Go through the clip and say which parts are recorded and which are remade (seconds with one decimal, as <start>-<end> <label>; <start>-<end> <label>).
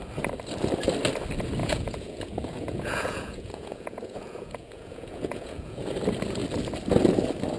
0.0-1.6 recorded; 1.6-5.9 remade; 5.9-7.6 recorded